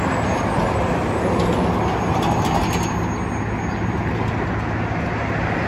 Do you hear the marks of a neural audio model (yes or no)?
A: no